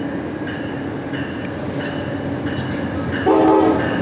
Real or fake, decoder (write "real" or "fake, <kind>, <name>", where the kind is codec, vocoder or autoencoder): real